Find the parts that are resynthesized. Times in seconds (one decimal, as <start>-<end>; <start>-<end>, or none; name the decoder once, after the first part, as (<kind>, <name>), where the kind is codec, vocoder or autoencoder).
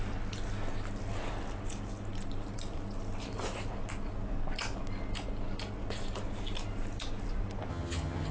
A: 7.7-8.3 (vocoder, HiFi-GAN)